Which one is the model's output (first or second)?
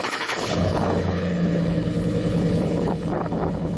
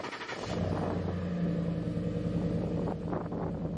first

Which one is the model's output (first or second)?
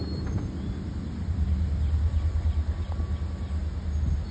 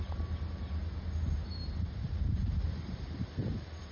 second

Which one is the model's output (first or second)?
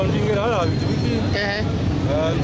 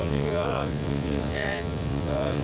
second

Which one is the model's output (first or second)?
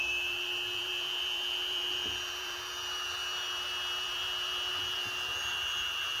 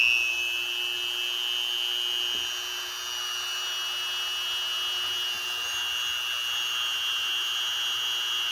first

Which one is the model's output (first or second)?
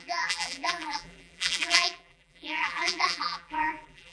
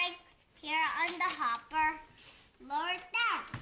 first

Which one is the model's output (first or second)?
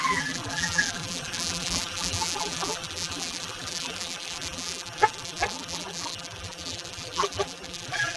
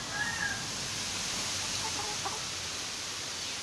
first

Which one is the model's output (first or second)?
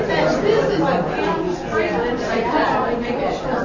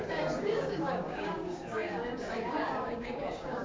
second